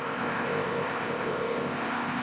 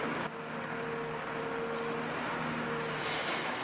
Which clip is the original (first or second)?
second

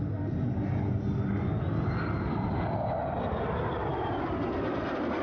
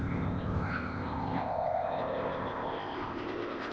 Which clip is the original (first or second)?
first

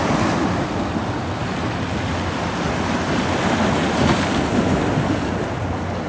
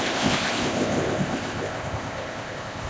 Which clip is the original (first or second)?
first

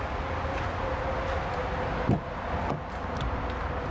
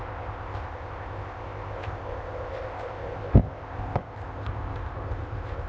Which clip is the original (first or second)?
first